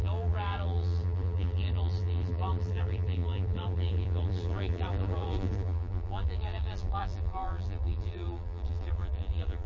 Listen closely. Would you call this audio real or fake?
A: fake